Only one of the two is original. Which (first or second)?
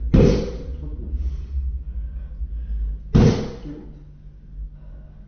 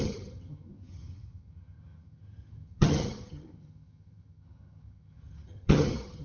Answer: first